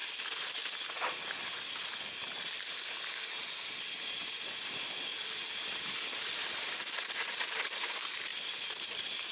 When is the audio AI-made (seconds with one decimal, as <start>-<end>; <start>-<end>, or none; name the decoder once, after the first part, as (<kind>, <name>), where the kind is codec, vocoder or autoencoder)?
8.3-9.3 (vocoder, BigVGAN v2)